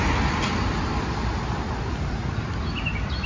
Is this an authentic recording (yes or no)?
yes